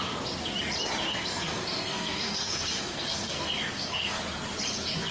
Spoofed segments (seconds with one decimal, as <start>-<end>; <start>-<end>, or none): 1.1-4.2